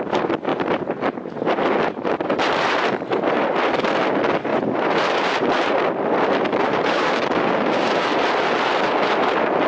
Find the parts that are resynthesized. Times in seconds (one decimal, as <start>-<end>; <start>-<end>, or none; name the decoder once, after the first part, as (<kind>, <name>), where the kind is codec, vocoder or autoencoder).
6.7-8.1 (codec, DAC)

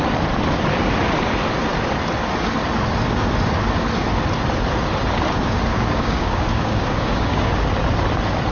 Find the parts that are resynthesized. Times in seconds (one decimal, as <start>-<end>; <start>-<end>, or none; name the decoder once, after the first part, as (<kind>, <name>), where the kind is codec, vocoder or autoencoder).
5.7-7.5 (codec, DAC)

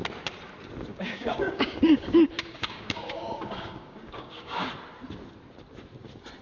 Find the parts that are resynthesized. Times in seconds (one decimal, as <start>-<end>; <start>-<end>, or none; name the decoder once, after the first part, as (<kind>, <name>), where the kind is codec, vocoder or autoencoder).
0.9-4.7 (codec, DAC)

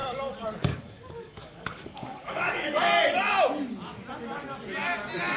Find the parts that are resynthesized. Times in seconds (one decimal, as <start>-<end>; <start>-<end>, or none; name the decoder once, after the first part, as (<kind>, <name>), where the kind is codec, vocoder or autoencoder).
0.0-3.0 (codec, DAC)

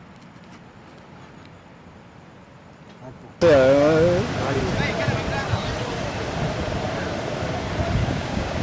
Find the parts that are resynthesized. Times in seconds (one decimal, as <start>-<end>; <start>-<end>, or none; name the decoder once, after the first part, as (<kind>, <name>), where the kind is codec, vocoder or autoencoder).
8.0-8.6 (codec, DAC)

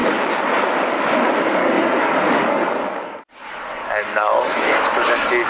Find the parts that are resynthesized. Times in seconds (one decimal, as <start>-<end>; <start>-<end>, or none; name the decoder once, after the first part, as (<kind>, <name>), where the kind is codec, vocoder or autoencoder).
1.6-3.2 (codec, DAC); 3.8-4.4